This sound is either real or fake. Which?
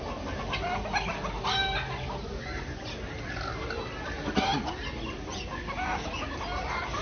real